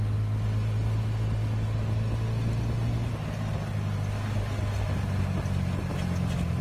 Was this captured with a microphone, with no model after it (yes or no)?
yes